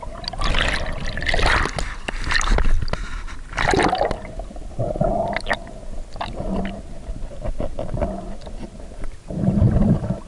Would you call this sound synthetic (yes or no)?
no